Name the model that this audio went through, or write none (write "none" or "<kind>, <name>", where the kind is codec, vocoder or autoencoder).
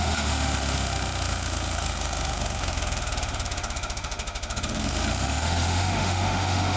autoencoder, DAC-VAE